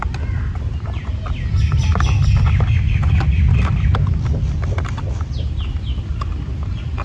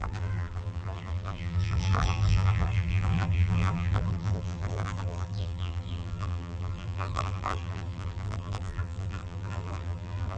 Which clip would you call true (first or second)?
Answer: first